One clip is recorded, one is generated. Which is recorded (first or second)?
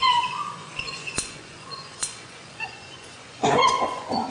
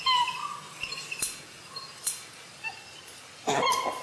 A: second